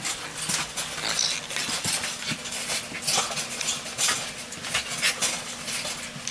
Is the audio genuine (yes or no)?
yes